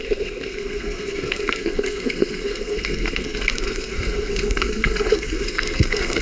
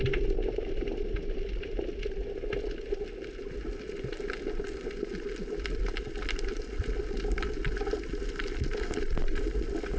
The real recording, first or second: second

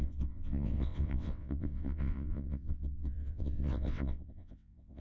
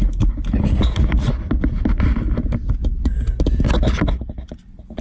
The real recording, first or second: second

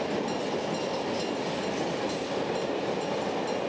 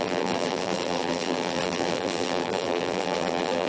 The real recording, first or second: first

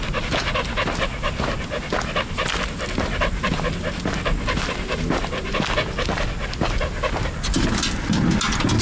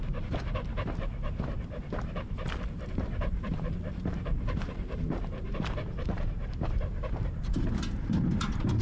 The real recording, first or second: first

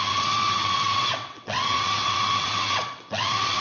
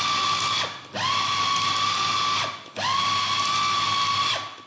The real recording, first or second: second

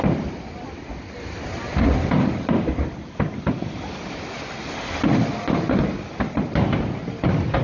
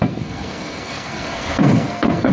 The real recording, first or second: first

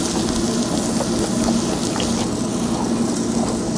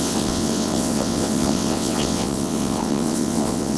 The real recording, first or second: first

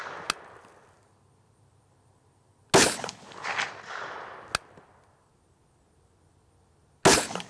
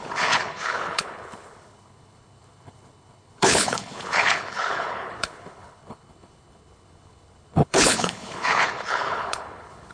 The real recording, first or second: first